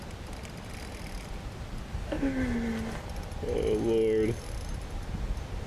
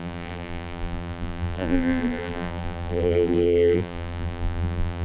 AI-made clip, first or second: second